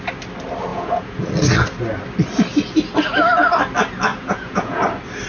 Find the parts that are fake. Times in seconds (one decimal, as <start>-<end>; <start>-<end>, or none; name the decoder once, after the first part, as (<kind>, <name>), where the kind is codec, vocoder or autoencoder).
0.7-1.3 (vocoder, Vocos); 4.1-4.8